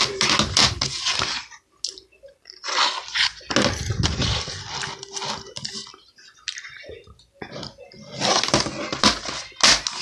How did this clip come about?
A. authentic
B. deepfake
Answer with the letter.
A